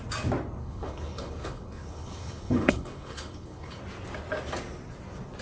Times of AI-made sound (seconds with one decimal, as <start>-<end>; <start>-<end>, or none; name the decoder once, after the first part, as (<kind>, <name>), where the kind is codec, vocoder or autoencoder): 0.6-3.8 (codec, HILCodec)